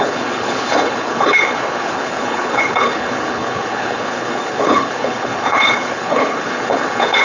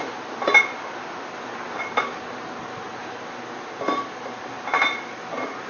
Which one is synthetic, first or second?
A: first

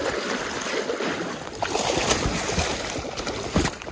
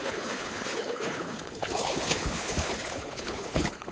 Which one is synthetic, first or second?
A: second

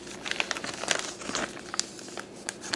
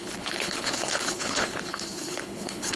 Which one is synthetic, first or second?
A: second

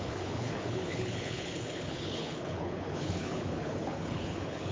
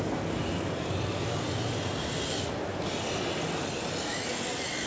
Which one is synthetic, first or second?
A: first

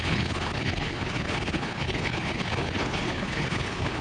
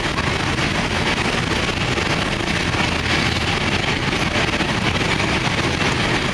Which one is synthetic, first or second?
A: first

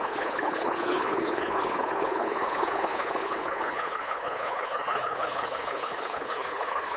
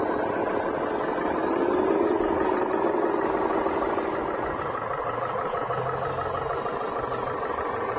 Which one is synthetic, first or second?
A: first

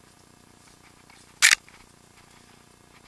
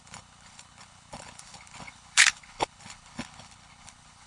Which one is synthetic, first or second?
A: second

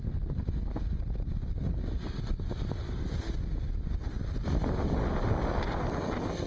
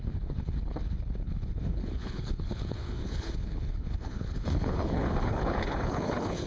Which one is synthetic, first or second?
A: second